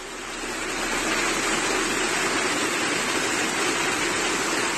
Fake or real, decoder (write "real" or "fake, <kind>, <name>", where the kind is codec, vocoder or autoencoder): real